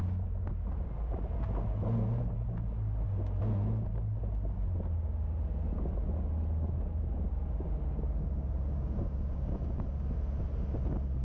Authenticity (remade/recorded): recorded